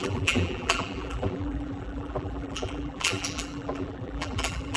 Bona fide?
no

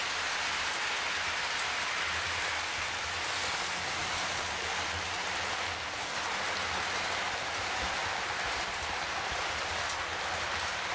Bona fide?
yes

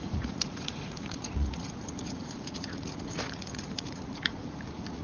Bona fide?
no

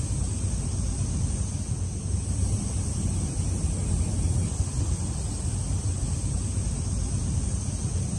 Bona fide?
yes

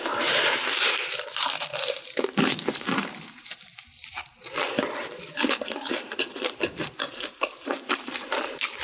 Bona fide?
no